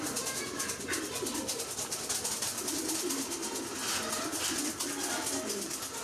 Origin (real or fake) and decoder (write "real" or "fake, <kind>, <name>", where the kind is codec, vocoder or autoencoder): real